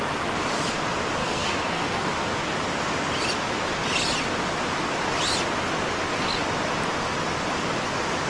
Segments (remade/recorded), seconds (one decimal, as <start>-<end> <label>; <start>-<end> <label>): 0.0-1.2 recorded; 1.2-2.1 remade; 2.1-8.3 recorded